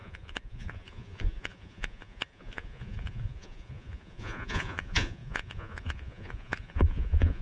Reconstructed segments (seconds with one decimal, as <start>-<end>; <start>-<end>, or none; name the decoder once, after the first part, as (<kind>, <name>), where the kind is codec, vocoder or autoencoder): 0.0-7.4 (vocoder, Vocos)